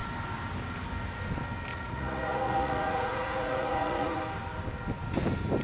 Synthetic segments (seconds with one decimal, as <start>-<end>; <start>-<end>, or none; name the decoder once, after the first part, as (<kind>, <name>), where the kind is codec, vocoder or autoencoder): 1.7-4.2 (vocoder, Vocos)